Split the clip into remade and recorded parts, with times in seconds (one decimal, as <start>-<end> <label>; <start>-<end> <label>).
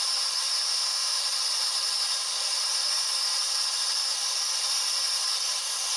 0.0-0.7 recorded; 0.7-1.2 remade; 1.2-6.0 recorded